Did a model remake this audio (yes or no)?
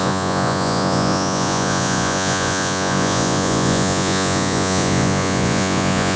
yes